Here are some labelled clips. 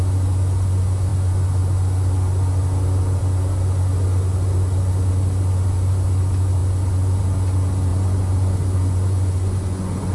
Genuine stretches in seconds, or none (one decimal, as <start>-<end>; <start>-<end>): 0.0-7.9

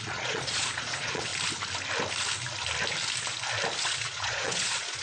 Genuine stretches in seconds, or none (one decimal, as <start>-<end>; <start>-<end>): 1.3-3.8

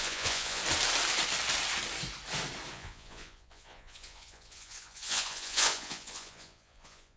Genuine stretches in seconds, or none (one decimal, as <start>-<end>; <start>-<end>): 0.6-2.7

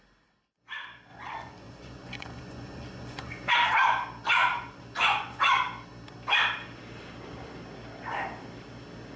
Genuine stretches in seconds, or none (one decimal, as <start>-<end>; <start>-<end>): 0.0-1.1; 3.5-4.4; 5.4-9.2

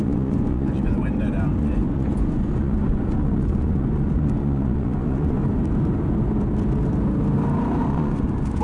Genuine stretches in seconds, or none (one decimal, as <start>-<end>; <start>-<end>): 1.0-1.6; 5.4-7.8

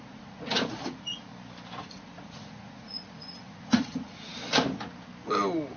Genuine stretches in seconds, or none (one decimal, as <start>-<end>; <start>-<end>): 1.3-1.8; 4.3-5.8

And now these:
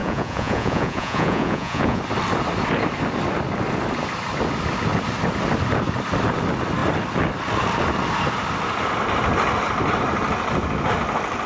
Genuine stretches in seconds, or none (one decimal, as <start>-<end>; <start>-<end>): 2.0-11.5

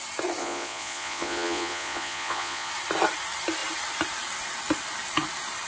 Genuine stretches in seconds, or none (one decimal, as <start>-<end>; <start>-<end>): 0.0-0.4; 2.7-5.7